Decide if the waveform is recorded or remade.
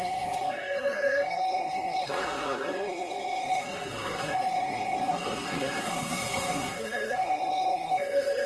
remade